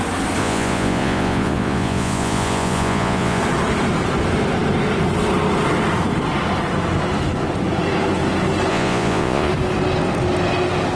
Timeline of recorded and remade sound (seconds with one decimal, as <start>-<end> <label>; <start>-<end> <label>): 0.0-0.4 recorded; 0.4-3.4 remade; 3.4-8.7 recorded; 8.7-9.5 remade; 9.5-11.0 recorded

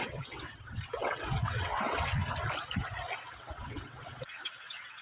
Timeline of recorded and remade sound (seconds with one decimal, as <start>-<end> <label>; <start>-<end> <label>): 0.0-2.2 remade; 2.2-3.2 recorded; 3.2-5.0 remade